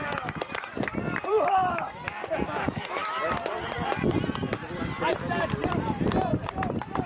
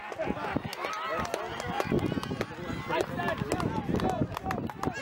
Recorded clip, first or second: second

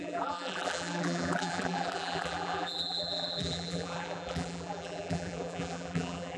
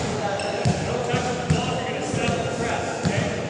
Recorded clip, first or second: second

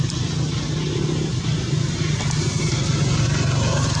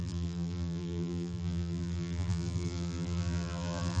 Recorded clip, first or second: first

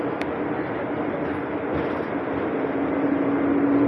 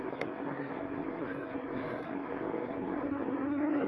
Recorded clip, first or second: first